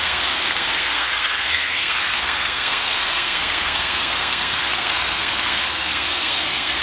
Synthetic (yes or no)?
yes